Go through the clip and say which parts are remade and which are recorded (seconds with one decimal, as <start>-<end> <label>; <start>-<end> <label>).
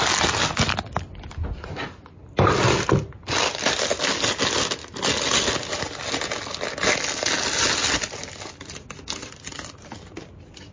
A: 0.0-10.7 recorded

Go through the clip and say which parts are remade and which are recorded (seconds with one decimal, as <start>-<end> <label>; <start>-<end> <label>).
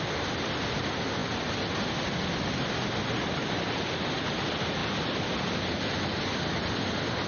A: 0.0-7.3 recorded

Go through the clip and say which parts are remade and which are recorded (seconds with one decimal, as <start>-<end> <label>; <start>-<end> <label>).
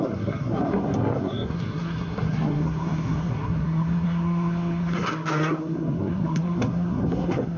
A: 0.0-7.6 remade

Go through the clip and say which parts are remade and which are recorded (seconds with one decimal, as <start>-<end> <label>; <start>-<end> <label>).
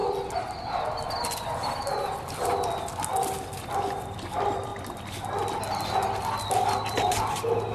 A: 0.0-7.7 recorded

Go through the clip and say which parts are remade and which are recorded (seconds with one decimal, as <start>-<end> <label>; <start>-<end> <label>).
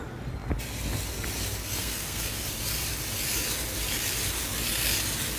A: 0.0-1.8 recorded; 1.8-2.5 remade; 2.5-5.4 recorded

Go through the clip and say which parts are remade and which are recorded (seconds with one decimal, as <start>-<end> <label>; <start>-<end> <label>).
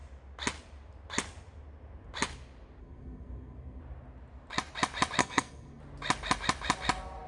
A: 0.0-2.8 recorded; 2.8-3.8 remade; 3.8-5.2 recorded; 5.2-5.8 remade; 5.8-7.3 recorded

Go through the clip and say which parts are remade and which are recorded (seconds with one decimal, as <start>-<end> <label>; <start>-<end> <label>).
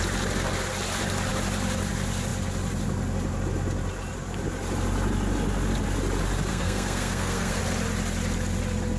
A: 0.0-6.5 recorded; 6.5-7.6 remade; 7.6-9.0 recorded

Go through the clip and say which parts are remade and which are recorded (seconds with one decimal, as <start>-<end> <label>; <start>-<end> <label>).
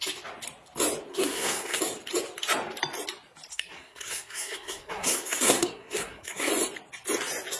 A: 0.0-1.1 recorded; 1.1-1.8 remade; 1.8-3.5 recorded; 3.5-6.5 remade; 6.5-7.6 recorded